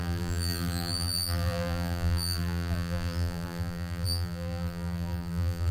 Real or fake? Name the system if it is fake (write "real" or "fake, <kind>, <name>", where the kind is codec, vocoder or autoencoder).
fake, vocoder, BigVGAN v2